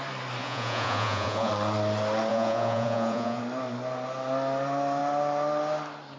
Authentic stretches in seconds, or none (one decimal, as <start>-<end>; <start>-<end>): 0.0-0.4; 1.5-2.3; 3.4-6.2